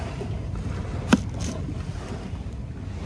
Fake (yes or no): no